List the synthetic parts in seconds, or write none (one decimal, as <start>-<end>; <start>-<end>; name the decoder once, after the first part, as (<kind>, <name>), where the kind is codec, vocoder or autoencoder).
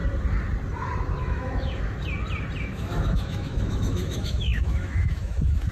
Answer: 1.2-2.0 (autoencoder, DAC-VAE); 2.6-5.7